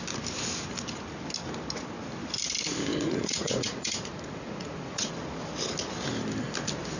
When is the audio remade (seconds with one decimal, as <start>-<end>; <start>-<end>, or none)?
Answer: 2.9-5.1

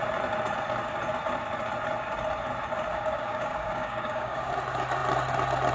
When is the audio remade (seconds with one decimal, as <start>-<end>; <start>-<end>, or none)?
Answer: 2.9-4.5